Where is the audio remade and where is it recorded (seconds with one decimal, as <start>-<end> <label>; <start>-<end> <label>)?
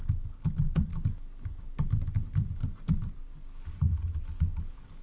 0.0-5.0 recorded